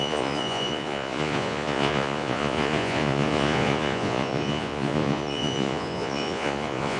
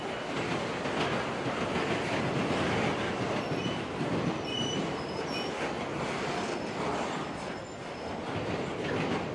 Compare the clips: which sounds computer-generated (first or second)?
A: first